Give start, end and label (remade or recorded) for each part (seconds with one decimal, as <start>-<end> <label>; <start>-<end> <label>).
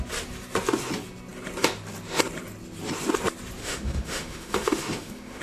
0.0-3.6 recorded; 3.6-5.4 remade